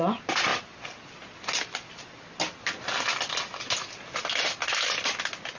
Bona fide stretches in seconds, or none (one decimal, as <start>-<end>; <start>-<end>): 0.0-5.6